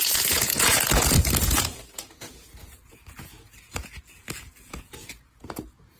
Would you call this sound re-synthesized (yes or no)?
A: yes